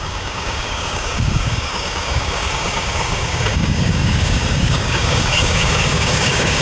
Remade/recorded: remade